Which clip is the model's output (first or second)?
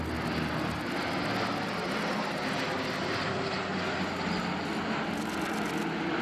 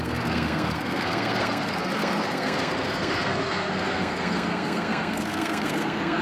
second